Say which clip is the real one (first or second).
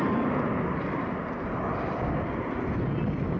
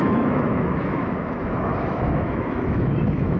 first